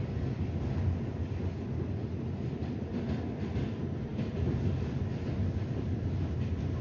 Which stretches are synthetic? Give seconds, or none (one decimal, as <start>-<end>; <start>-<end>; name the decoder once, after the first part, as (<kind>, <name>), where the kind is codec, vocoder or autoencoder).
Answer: none